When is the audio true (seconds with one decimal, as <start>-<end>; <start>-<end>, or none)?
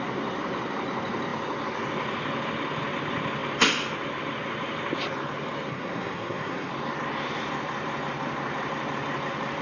0.0-5.7; 6.7-9.6